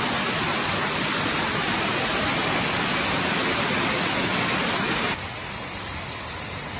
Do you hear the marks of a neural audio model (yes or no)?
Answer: no